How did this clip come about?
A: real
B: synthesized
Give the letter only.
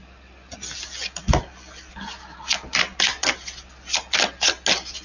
A